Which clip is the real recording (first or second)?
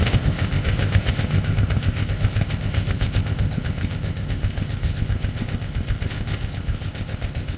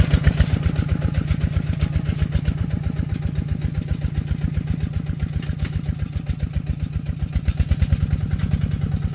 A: second